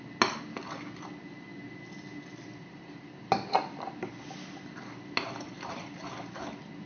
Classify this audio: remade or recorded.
recorded